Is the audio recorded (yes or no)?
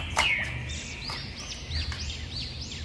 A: yes